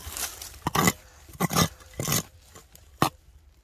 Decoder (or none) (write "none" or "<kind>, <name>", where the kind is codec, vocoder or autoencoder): vocoder, BigVGAN v2